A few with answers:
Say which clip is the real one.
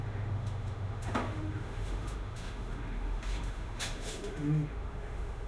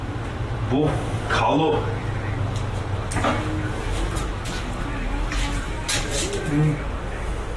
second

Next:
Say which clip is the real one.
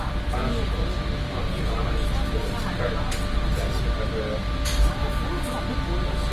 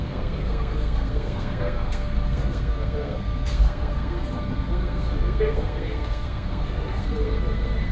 first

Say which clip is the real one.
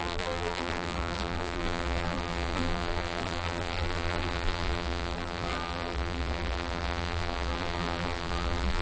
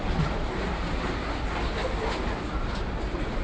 second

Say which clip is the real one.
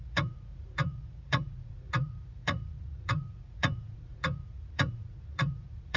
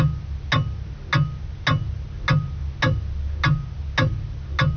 second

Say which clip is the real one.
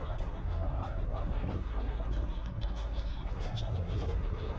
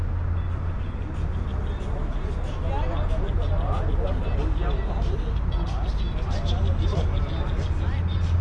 second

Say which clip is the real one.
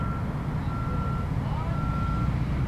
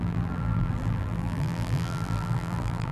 first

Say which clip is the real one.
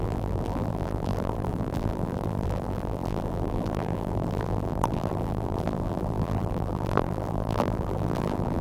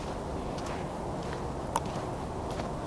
second